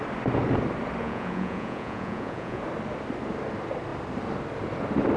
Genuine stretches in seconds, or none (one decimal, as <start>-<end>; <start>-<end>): 0.0-1.0; 2.6-5.2